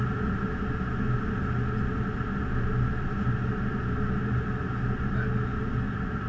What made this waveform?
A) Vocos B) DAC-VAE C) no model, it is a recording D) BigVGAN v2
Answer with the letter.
C